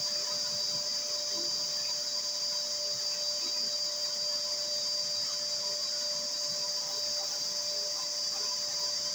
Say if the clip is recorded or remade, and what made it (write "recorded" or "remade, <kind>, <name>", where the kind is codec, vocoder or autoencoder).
recorded